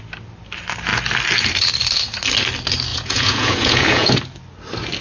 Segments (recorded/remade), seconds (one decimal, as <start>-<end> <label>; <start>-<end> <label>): 0.0-2.9 recorded; 2.9-4.2 remade; 4.2-5.0 recorded